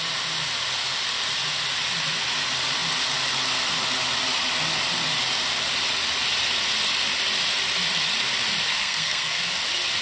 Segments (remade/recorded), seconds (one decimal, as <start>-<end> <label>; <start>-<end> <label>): 0.0-8.7 recorded; 8.7-9.5 remade; 9.5-10.0 recorded